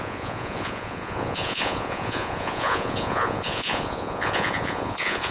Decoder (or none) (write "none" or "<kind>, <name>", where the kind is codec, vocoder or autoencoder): vocoder, Vocos